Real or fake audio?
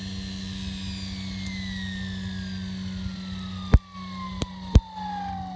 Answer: real